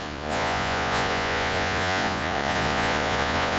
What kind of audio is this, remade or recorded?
remade